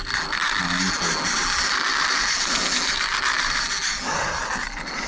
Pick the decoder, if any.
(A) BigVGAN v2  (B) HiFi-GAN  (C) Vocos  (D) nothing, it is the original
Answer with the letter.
D